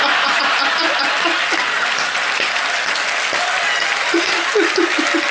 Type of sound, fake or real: real